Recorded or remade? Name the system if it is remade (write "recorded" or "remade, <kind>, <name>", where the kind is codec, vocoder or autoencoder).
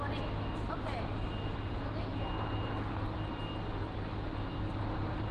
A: recorded